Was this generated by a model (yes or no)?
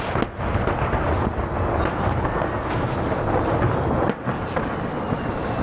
no